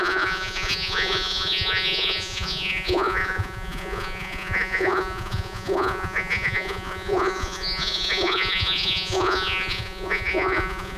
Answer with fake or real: fake